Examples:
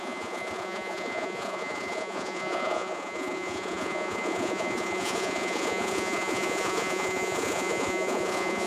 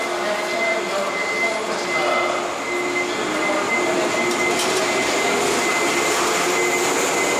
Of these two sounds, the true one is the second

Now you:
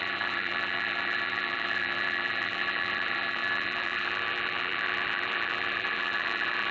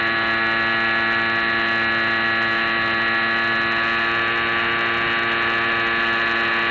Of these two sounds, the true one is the second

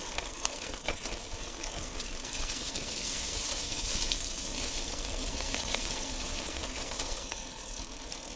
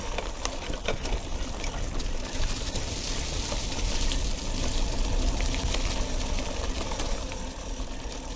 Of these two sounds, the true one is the second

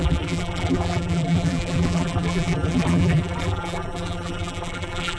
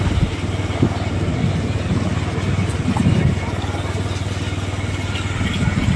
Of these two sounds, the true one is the second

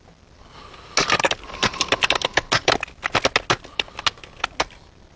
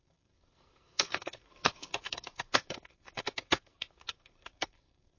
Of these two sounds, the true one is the first